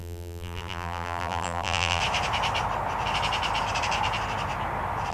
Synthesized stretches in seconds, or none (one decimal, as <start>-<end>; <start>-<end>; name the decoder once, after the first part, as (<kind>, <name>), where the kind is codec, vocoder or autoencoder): 0.0-2.0 (vocoder, BigVGAN v2)